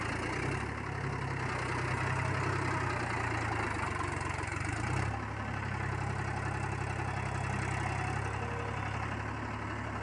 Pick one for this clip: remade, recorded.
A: recorded